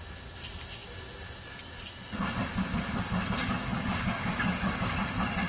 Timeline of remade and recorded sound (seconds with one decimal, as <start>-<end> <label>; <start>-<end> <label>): 0.0-3.7 recorded; 3.7-4.9 remade; 4.9-5.5 recorded